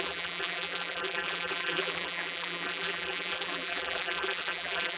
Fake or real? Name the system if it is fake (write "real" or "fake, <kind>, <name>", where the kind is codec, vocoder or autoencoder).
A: fake, vocoder, BigVGAN v2